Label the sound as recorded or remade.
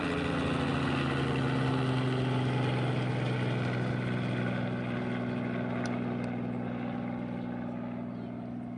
recorded